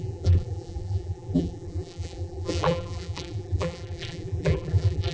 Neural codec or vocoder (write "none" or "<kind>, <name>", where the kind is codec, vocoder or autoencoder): vocoder, BigVGAN v2